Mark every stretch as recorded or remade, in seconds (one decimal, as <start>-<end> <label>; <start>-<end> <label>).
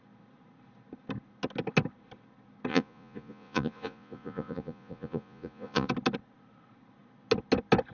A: 0.0-2.7 recorded; 2.7-5.9 remade; 5.9-7.9 recorded